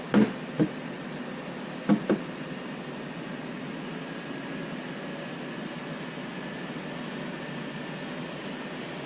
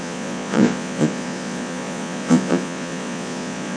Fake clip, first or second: second